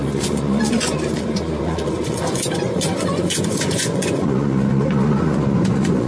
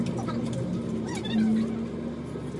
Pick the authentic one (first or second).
second